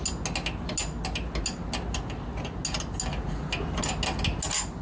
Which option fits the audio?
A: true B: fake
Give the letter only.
A